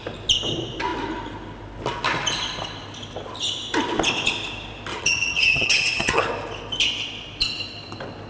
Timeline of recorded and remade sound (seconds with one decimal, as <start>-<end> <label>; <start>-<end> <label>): 0.0-4.9 recorded; 4.9-6.2 remade; 6.2-8.3 recorded

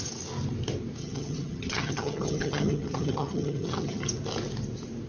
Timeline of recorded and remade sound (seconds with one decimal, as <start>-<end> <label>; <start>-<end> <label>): 0.0-1.0 recorded; 1.0-4.1 remade; 4.1-5.1 recorded

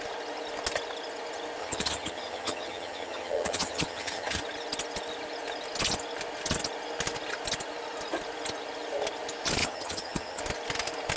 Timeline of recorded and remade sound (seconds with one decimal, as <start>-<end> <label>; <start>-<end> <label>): 0.0-1.6 recorded; 1.6-4.4 remade; 4.4-9.6 recorded; 9.6-10.4 remade; 10.4-11.2 recorded

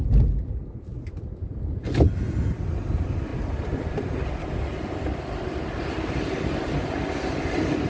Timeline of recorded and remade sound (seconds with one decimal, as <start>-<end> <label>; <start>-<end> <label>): 0.0-7.9 recorded

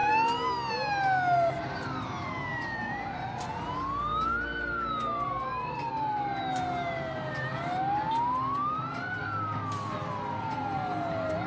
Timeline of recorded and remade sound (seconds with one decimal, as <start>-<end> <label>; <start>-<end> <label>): 0.0-11.5 recorded